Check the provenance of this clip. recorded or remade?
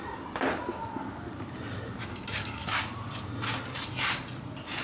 recorded